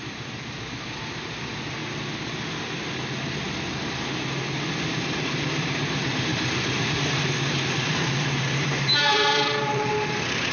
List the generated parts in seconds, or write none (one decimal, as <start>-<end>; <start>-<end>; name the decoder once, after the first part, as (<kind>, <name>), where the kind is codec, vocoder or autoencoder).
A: 0.0-1.8 (vocoder, BigVGAN v2); 4.8-10.5